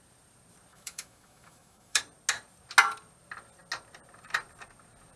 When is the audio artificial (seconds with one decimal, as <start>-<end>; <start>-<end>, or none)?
0.7-2.0